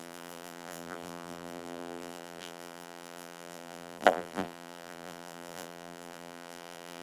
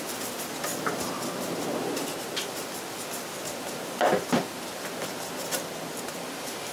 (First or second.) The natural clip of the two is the second